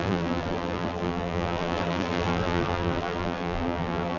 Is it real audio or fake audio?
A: fake